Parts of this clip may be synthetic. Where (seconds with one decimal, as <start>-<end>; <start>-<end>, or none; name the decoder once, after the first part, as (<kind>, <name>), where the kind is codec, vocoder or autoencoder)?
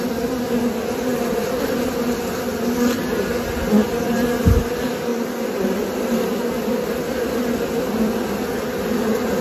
none